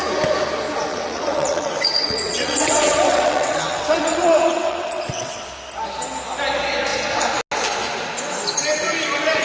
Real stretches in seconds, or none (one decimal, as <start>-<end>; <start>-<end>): 0.0-0.9; 5.5-9.4